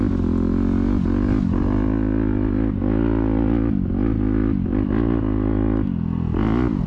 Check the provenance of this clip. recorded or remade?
recorded